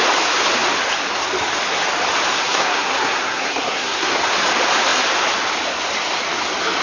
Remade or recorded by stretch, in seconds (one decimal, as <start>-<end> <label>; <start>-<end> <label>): 0.0-2.3 recorded; 2.3-4.2 remade; 4.2-6.8 recorded